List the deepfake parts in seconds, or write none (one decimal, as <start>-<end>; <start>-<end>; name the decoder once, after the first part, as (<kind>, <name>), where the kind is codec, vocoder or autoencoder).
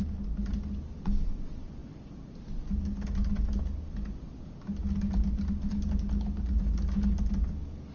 none